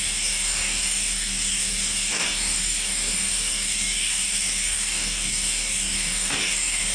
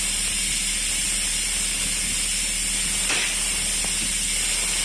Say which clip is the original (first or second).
second